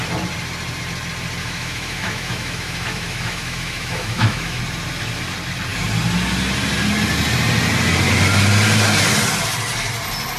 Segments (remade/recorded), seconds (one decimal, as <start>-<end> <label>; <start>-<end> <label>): 0.0-1.4 recorded; 1.4-4.6 remade; 4.6-10.4 recorded

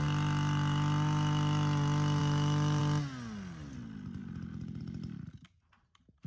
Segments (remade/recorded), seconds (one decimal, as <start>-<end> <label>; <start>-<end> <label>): 0.0-2.2 recorded; 2.2-2.8 remade; 2.8-6.3 recorded

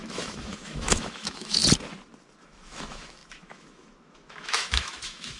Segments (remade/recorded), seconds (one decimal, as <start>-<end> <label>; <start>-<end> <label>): 0.0-1.6 remade; 1.6-2.4 recorded; 2.4-5.4 remade

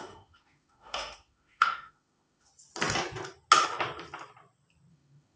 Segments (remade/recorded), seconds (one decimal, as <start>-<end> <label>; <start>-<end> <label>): 0.0-2.5 remade; 2.5-4.9 recorded; 4.9-5.4 remade

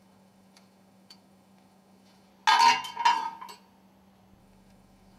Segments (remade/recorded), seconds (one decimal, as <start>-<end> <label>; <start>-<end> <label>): 0.0-2.3 remade; 2.3-4.4 recorded; 4.4-5.2 remade